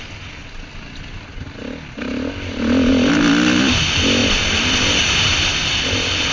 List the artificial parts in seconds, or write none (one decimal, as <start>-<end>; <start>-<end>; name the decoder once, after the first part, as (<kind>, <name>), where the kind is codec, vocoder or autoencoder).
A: none